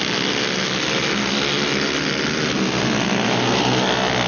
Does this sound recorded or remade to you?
recorded